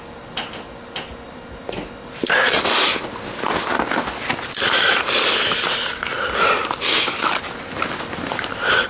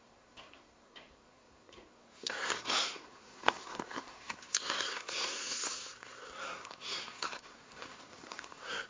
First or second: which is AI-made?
second